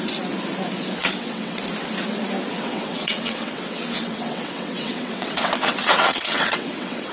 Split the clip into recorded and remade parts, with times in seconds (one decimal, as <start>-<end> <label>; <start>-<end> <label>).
0.0-1.0 recorded; 1.0-1.6 remade; 1.6-2.5 recorded; 2.5-7.1 remade